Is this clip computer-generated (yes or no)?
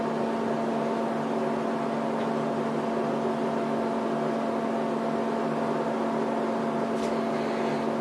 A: no